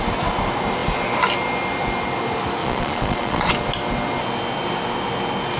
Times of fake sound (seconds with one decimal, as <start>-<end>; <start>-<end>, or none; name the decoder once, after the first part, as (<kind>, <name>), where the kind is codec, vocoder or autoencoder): 2.6-3.5 (vocoder, Vocos)